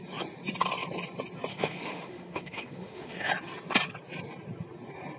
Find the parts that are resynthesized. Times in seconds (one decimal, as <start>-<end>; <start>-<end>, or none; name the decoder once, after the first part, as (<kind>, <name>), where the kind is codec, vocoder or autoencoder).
1.5-3.3 (autoencoder, DAC-VAE)